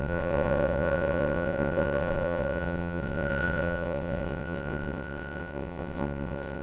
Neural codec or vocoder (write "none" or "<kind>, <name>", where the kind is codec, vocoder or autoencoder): vocoder, WaveNeXt